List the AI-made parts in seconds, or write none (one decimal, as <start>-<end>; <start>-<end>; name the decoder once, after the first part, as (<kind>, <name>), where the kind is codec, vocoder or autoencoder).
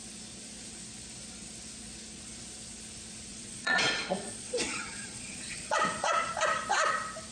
3.3-6.3 (vocoder, Vocos)